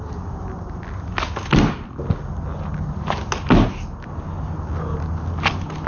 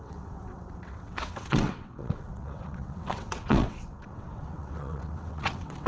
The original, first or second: first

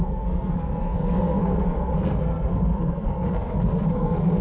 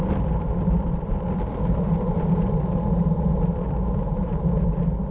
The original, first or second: second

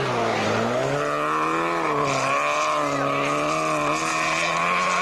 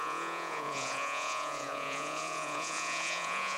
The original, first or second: first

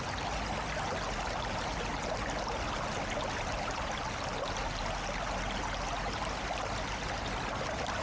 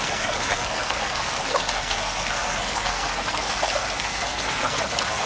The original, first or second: first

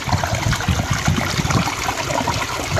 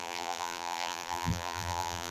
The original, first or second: first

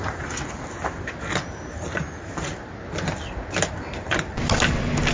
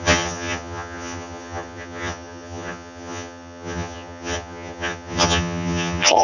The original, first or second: first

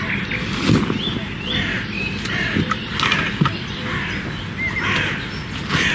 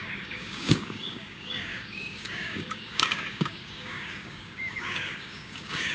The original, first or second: first